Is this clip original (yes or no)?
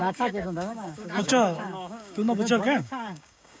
no